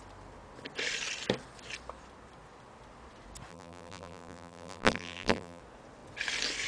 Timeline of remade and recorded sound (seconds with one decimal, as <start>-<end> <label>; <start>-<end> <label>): 0.0-3.5 recorded; 3.5-5.6 remade; 5.6-6.7 recorded